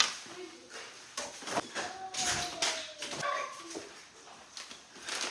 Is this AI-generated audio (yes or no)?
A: no